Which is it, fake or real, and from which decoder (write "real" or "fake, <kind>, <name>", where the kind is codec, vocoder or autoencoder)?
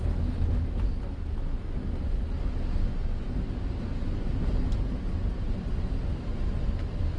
real